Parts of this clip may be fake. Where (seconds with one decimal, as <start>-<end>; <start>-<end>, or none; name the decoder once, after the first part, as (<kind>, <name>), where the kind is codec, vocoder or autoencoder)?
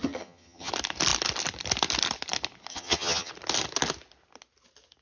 0.0-0.7 (vocoder, HiFi-GAN); 2.7-3.3